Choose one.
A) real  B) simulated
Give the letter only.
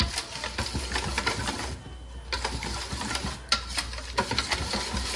A